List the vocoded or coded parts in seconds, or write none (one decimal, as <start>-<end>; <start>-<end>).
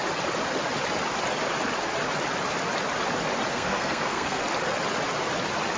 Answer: 3.5-4.4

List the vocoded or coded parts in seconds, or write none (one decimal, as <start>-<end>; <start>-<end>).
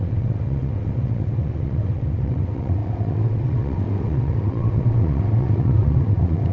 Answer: 0.0-6.5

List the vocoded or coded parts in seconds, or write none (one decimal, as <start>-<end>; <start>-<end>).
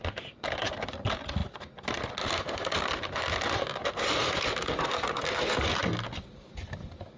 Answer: none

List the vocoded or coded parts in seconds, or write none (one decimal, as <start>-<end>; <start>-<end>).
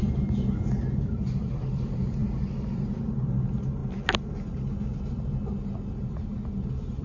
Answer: none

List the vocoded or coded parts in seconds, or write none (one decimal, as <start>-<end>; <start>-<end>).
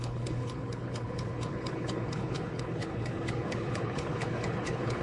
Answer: 0.0-5.0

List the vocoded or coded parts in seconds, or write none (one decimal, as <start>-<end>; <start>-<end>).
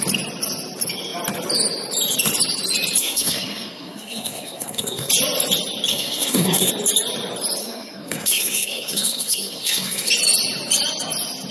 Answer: 3.0-5.1; 5.9-6.7; 7.6-10.1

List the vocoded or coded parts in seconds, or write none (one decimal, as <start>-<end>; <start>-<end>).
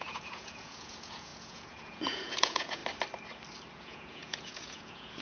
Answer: 0.0-2.8; 3.7-5.2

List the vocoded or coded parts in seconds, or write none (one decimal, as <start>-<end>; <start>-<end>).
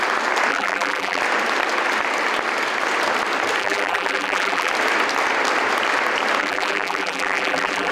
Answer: 0.5-1.2; 3.6-4.7; 6.4-7.9